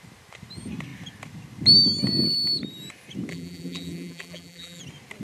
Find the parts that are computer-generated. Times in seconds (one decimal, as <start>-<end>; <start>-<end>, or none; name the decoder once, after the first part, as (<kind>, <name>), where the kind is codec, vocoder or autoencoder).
3.3-4.8 (vocoder, BigVGAN v2)